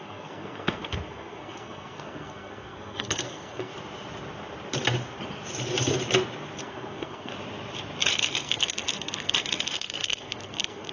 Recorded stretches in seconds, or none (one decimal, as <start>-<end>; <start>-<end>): 3.7-6.6; 7.3-8.1